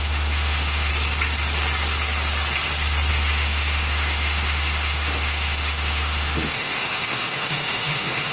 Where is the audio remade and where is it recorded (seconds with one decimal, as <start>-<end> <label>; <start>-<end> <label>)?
0.0-0.9 remade; 0.9-3.1 recorded; 3.1-8.3 remade